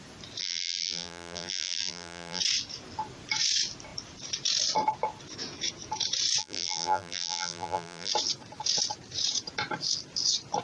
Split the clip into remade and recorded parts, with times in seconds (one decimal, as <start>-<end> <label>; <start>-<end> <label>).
0.0-0.4 recorded; 0.4-2.4 remade; 2.4-6.4 recorded; 6.4-8.1 remade; 8.1-10.6 recorded